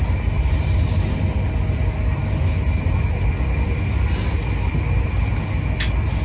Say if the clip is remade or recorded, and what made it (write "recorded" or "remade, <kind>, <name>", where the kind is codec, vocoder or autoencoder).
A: recorded